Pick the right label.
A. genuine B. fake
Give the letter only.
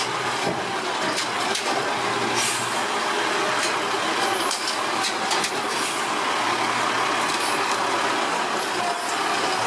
A